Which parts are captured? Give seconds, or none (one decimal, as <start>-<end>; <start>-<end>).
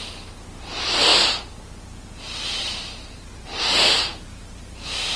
0.0-5.2